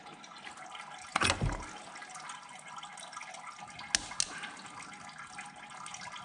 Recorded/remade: recorded